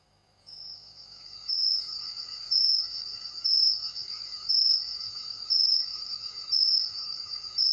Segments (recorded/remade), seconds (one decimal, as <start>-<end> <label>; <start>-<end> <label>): 0.0-7.7 remade